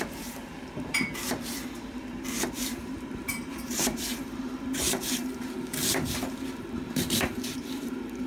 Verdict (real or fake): fake